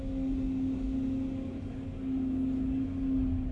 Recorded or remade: recorded